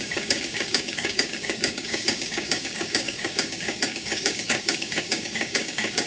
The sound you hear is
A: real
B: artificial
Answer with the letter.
B